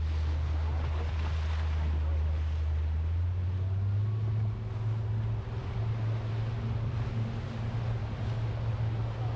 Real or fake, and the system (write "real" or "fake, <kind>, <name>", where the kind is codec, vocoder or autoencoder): real